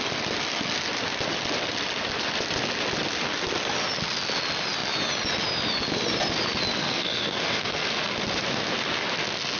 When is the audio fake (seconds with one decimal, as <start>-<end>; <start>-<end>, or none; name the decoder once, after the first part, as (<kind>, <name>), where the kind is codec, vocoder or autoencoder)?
6.8-8.0 (codec, SNAC)